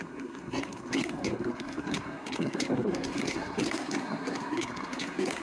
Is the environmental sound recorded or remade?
remade